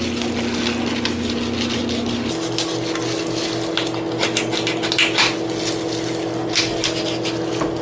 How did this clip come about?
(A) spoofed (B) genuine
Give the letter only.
B